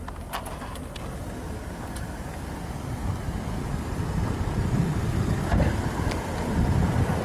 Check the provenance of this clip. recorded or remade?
recorded